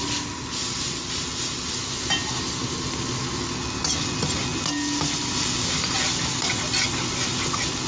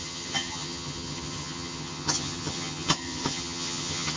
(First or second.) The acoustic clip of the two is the first